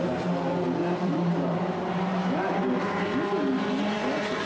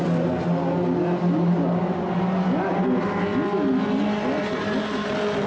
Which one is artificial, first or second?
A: first